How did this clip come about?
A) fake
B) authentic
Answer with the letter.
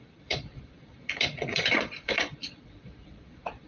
A